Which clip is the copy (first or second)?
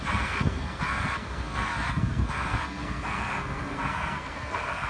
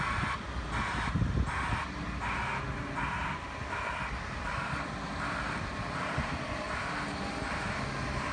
first